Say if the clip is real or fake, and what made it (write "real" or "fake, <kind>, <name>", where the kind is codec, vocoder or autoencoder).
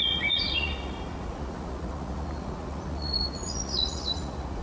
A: fake, vocoder, Vocos